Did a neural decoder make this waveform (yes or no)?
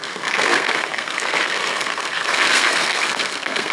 yes